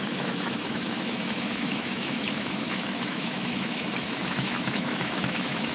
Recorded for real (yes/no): no